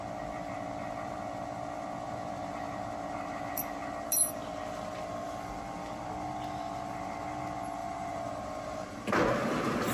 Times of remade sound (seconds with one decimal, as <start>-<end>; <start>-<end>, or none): 7.8-9.1